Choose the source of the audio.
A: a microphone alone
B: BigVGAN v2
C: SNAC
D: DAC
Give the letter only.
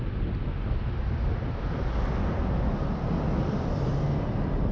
A